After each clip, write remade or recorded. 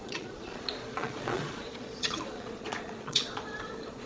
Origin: remade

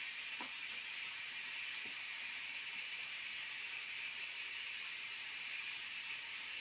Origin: remade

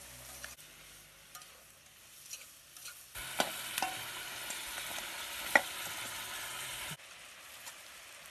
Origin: recorded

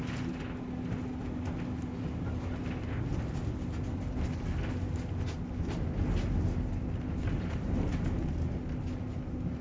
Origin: recorded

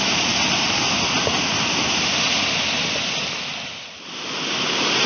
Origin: recorded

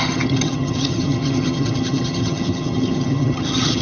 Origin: remade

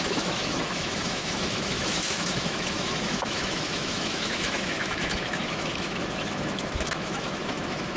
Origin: remade